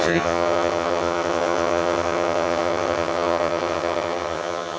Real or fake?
fake